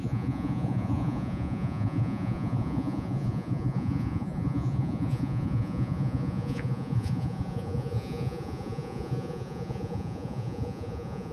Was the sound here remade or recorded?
remade